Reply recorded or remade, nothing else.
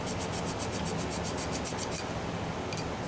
recorded